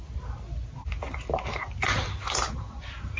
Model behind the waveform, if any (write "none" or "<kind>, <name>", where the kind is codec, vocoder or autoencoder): none